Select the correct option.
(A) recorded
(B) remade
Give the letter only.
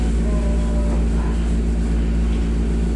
A